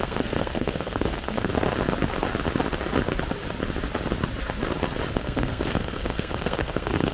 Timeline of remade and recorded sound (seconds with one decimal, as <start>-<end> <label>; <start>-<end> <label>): 0.0-1.5 remade; 1.5-5.1 recorded; 5.1-7.1 remade

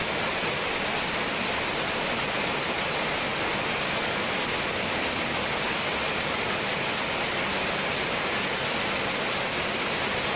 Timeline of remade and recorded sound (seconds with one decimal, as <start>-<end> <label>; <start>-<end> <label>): 0.0-10.4 recorded

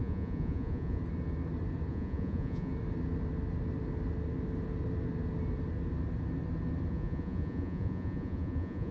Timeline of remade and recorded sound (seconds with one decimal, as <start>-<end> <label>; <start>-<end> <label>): 0.0-1.0 remade; 1.0-1.9 recorded; 1.9-2.7 remade; 2.7-6.9 recorded; 6.9-8.9 remade

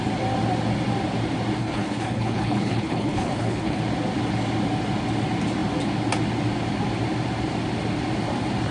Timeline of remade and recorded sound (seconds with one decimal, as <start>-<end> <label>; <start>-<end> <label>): 0.0-1.6 recorded; 1.6-3.8 remade; 3.8-8.7 recorded